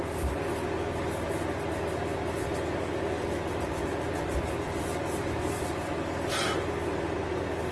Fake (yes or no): no